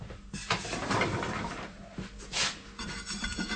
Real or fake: real